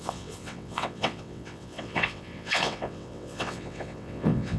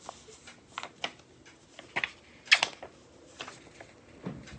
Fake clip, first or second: first